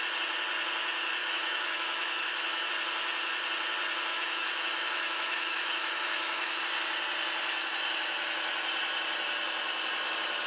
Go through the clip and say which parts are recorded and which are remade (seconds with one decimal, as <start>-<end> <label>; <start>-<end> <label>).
0.0-1.2 recorded; 1.2-2.7 remade; 2.7-4.1 recorded; 4.1-6.6 remade; 6.6-10.5 recorded